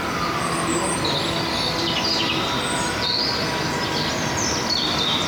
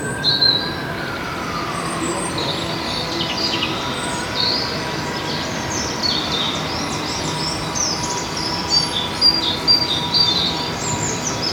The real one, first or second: first